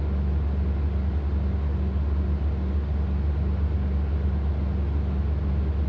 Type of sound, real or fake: real